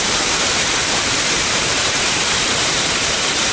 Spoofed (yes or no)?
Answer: yes